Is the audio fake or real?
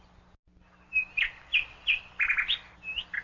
real